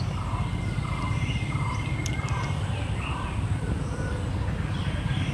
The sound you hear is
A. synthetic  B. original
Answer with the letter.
B